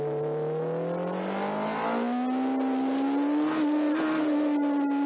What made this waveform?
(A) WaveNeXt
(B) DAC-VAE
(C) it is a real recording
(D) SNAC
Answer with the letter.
C